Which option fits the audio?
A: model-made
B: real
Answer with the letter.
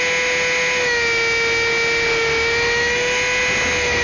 B